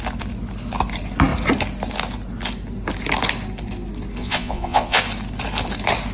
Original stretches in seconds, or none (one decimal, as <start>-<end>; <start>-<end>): 0.0-4.2; 5.0-6.1